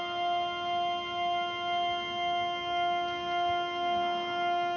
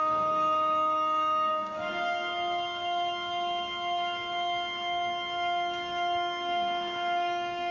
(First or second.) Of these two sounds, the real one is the first